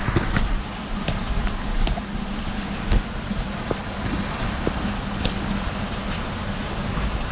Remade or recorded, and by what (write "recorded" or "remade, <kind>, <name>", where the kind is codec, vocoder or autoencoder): recorded